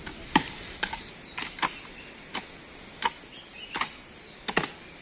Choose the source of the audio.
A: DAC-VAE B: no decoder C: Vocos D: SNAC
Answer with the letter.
B